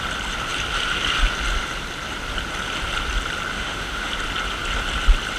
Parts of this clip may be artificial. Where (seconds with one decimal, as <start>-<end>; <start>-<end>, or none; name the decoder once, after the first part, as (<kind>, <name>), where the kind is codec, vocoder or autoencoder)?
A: 3.5-4.1 (autoencoder, DAC-VAE)